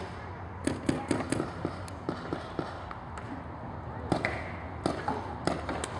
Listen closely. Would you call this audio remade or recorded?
recorded